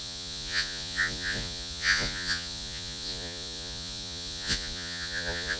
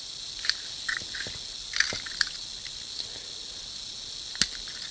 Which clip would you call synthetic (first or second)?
first